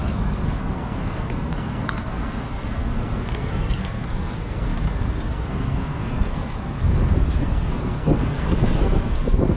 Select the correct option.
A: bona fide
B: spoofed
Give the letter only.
B